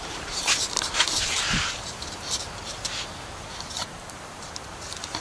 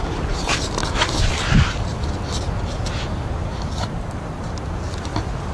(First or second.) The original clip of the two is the second